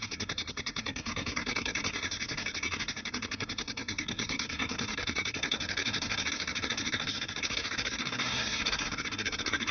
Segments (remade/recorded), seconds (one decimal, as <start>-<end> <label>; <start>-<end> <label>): 0.0-9.7 remade